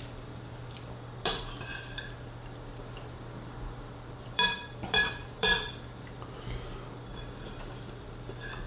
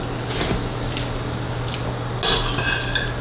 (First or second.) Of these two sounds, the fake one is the first